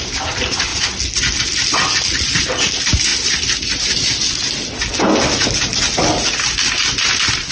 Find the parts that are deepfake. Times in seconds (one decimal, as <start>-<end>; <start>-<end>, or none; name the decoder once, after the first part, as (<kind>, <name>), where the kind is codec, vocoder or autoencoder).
none